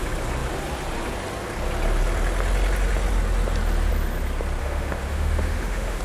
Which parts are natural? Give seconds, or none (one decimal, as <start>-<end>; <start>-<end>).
0.0-4.6